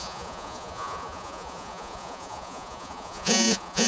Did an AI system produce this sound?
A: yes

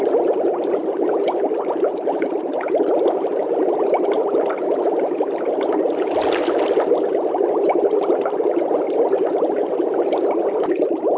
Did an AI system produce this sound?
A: no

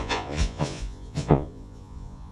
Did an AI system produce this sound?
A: yes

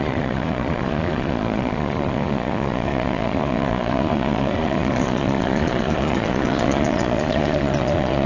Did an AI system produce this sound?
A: yes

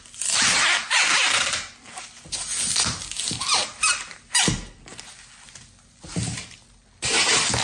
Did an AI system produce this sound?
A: no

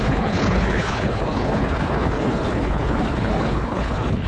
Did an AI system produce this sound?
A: yes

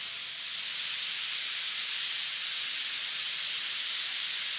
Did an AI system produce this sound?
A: no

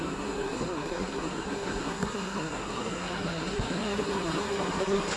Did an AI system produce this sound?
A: yes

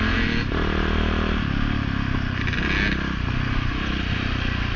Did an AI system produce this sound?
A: no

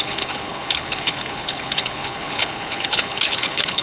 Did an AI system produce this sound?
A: yes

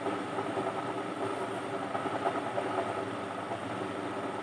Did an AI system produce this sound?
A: no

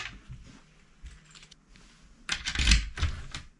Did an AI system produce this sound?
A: no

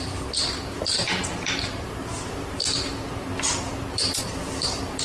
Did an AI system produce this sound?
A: yes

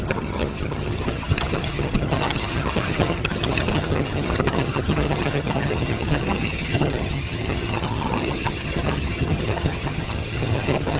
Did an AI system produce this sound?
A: yes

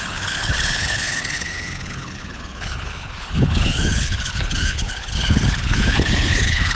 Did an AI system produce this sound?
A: yes